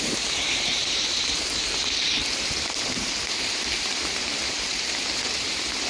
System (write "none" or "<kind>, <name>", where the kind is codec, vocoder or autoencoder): vocoder, BigVGAN v2